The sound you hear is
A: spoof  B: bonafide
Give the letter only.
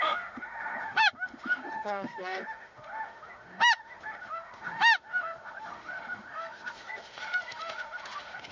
A